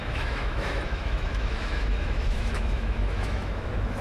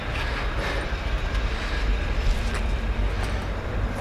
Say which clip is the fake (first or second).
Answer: first